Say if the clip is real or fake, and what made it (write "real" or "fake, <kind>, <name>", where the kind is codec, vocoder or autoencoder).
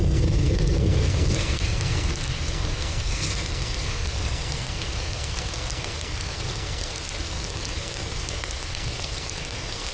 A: fake, codec, SNAC